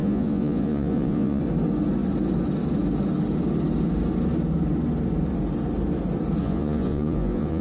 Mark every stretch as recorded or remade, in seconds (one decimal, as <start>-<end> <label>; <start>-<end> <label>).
0.0-1.4 remade; 1.4-6.4 recorded; 6.4-7.6 remade